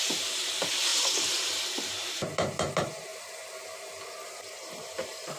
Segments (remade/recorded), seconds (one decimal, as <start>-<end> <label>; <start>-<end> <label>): 0.0-3.1 remade; 3.1-4.3 recorded; 4.3-5.4 remade